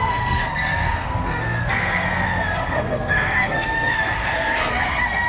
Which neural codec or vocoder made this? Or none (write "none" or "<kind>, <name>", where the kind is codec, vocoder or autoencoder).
codec, SNAC